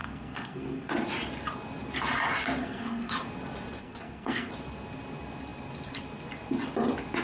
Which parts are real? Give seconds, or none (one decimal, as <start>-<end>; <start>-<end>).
0.9-2.6; 3.1-3.8; 4.5-7.2